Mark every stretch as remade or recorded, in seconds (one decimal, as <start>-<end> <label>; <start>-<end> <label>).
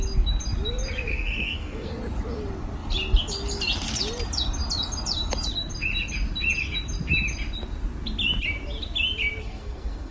0.0-1.1 recorded; 1.1-1.9 remade; 1.9-9.4 recorded; 9.4-10.1 remade